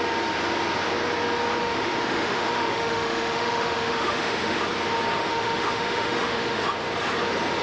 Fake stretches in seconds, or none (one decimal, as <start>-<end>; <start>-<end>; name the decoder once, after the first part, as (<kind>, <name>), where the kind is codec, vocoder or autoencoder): 1.6-4.6 (autoencoder, DAC-VAE); 5.2-6.6